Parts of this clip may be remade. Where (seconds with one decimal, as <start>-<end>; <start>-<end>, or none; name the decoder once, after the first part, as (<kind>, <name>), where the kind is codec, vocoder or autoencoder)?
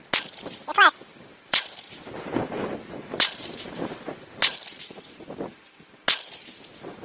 0.6-4.8 (vocoder, BigVGAN v2)